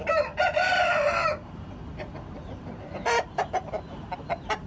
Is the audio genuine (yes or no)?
no